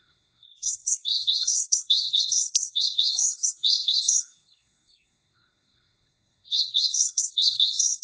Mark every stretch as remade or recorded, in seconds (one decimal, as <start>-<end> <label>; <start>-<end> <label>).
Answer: 0.0-8.0 remade